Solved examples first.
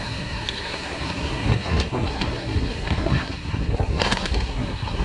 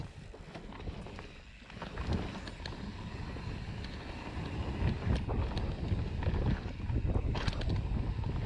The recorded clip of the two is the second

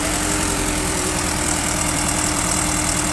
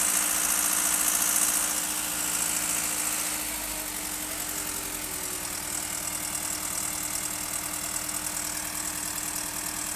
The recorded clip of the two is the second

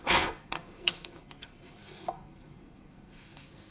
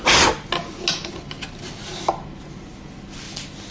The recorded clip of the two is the second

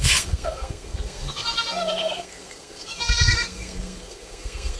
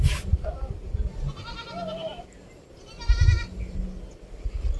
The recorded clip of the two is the second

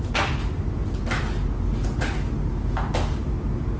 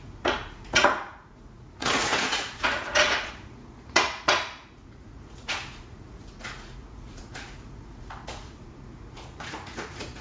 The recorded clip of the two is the first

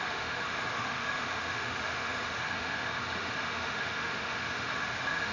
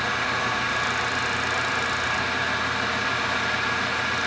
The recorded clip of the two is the second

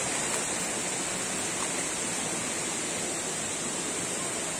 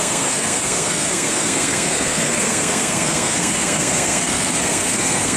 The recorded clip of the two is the first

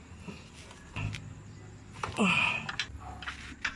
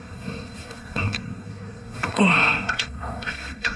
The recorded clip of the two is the first